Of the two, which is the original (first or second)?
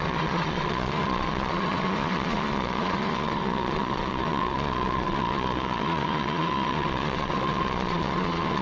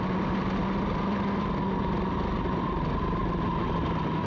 second